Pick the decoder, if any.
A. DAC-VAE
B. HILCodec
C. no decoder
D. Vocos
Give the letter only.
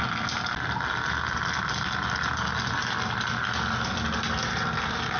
C